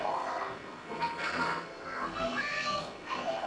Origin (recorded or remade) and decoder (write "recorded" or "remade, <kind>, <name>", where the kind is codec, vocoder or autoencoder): remade, codec, SNAC